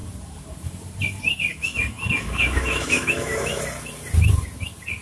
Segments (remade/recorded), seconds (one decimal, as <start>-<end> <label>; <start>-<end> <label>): 0.0-1.5 recorded; 1.5-3.6 remade; 3.6-5.0 recorded